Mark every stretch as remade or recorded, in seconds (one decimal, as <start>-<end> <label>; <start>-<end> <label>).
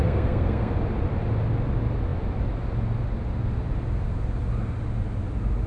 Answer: 0.0-0.7 remade; 0.7-5.7 recorded